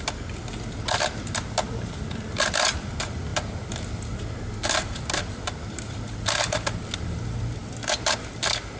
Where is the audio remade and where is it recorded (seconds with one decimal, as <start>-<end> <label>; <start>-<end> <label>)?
0.0-8.8 recorded